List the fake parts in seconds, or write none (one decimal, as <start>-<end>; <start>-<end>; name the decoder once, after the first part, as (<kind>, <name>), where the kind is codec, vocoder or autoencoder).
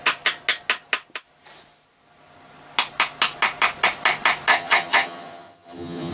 4.5-6.1 (vocoder, HiFi-GAN)